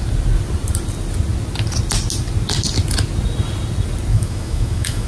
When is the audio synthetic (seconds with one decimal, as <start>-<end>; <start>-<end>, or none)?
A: 4.1-5.1